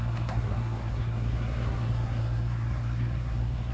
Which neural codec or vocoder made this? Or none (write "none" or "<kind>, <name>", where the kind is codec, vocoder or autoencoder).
codec, SNAC